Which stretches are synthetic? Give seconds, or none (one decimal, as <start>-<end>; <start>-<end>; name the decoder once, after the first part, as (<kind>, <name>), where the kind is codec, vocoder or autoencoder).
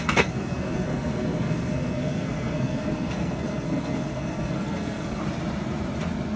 0.0-5.2 (codec, SNAC)